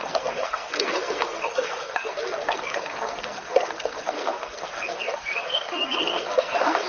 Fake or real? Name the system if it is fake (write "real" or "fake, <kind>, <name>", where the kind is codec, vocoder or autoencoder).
fake, codec, SNAC